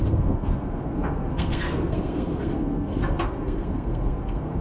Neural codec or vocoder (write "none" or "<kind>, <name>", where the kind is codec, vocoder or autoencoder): codec, SNAC